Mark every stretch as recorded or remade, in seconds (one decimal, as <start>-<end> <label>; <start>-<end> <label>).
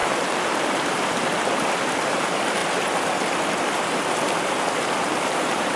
0.0-2.6 remade; 2.6-4.7 recorded; 4.7-5.8 remade